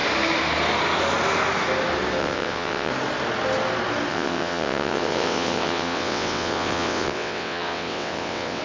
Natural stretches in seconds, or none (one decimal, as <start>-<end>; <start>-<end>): 0.0-2.2; 2.9-4.1